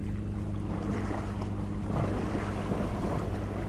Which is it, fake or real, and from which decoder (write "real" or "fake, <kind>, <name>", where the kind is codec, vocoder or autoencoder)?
real